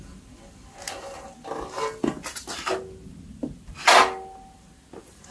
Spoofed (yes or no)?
no